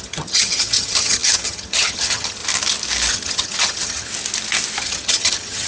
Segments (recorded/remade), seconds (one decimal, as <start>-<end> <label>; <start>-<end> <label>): 0.0-2.4 remade; 2.4-3.1 recorded; 3.1-4.1 remade; 4.1-4.8 recorded; 4.8-5.7 remade